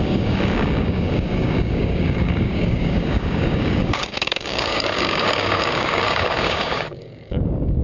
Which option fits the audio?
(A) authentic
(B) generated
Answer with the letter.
B